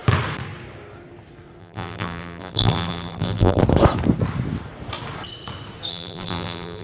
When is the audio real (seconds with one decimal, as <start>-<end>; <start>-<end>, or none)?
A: 0.0-1.6; 3.6-5.9